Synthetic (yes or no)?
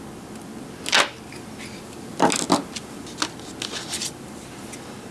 no